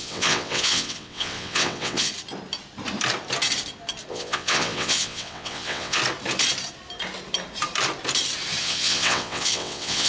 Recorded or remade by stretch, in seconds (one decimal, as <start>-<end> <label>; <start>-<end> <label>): 0.0-2.1 remade; 2.1-4.1 recorded; 4.1-6.0 remade; 6.0-8.6 recorded; 8.6-10.1 remade